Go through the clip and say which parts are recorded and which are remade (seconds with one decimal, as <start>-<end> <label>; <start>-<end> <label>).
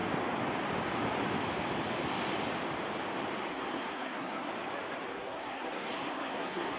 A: 0.0-3.5 recorded; 3.5-4.5 remade; 4.5-5.1 recorded; 5.1-6.8 remade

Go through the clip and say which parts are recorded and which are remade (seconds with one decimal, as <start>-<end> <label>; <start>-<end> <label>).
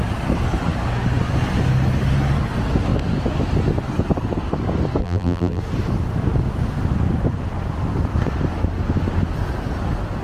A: 0.0-5.0 recorded; 5.0-5.6 remade; 5.6-10.2 recorded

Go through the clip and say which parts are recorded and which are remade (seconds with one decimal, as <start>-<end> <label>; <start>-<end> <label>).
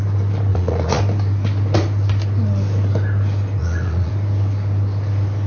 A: 0.0-0.5 recorded; 0.5-1.0 remade; 1.0-3.6 recorded; 3.6-4.1 remade; 4.1-5.5 recorded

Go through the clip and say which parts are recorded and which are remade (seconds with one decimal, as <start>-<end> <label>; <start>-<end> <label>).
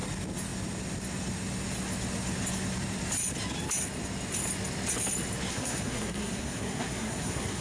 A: 0.0-5.5 recorded; 5.5-7.6 remade